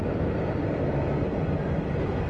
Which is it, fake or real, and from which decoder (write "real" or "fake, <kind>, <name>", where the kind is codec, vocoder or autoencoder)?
real